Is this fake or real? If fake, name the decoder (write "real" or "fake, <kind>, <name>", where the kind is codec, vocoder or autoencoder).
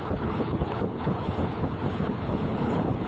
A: fake, codec, HILCodec